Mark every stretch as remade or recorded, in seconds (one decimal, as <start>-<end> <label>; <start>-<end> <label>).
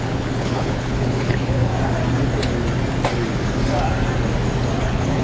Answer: 0.0-1.7 remade; 1.7-4.8 recorded; 4.8-5.2 remade